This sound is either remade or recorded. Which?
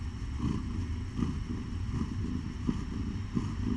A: recorded